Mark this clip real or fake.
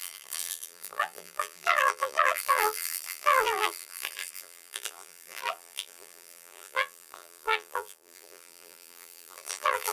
fake